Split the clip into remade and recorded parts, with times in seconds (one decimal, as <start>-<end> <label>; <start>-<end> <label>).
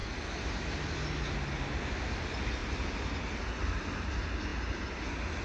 0.0-5.4 recorded